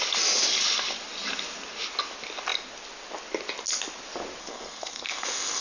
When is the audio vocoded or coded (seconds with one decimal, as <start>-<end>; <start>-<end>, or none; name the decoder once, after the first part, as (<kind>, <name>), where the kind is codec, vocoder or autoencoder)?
4.4-5.6 (codec, SNAC)